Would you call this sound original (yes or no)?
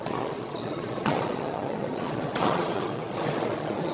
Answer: no